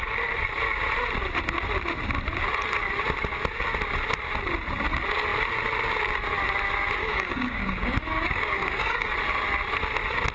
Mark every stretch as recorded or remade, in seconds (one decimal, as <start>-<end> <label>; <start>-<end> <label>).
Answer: 0.0-7.0 recorded; 7.0-9.1 remade; 9.1-10.3 recorded